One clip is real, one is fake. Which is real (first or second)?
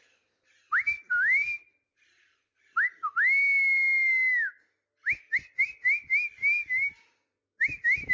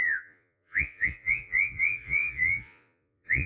first